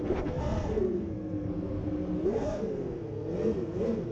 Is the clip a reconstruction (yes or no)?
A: yes